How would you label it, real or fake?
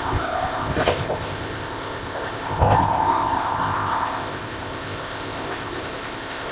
fake